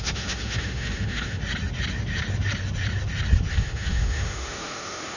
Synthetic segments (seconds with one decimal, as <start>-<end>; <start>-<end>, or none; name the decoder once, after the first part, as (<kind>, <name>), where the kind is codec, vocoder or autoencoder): 0.0-1.4 (autoencoder, DAC-VAE); 3.5-5.2